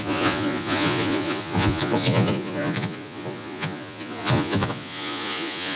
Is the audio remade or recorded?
remade